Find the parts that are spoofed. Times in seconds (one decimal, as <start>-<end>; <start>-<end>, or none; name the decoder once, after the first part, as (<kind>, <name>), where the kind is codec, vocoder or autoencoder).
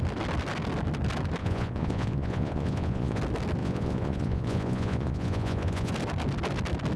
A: 1.4-3.2 (vocoder, Vocos); 3.6-5.9